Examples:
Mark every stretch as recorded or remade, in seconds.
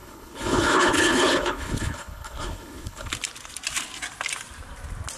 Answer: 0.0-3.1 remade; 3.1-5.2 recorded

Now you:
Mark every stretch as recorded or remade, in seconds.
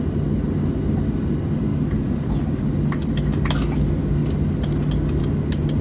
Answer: 0.0-5.8 recorded